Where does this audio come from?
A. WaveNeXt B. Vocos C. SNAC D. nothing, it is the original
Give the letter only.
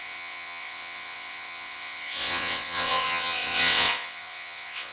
A